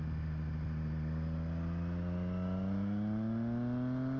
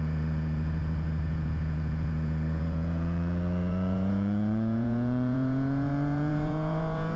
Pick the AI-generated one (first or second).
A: second